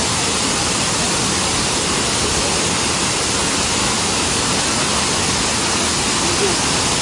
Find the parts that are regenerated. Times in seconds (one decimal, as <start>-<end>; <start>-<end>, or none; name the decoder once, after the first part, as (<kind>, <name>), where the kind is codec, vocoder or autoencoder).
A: 3.8-4.4 (autoencoder, DAC-VAE)